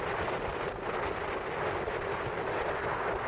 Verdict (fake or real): real